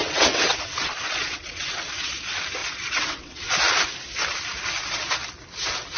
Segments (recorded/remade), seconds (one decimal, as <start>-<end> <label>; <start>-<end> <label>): 0.0-2.2 remade; 2.2-2.6 recorded; 2.6-3.5 remade; 3.5-6.0 recorded